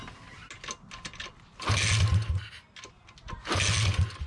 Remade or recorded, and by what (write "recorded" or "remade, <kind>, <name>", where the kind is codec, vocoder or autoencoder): recorded